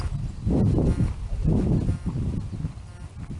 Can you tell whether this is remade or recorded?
recorded